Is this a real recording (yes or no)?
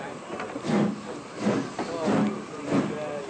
yes